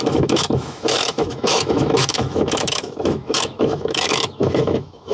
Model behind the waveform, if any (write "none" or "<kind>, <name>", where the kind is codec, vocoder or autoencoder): autoencoder, DAC-VAE